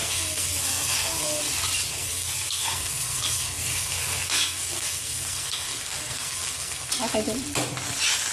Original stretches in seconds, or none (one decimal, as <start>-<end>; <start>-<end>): 1.4-1.9; 6.9-8.3